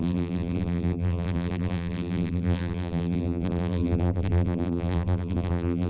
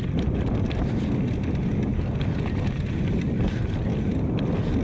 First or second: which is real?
second